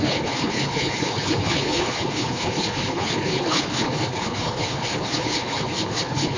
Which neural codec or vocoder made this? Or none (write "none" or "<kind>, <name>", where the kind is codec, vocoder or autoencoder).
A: codec, HILCodec